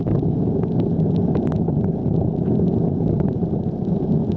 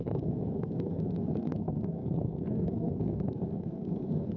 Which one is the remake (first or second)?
second